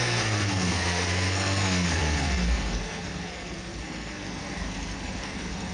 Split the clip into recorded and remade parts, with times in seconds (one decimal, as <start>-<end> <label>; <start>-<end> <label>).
0.0-5.7 remade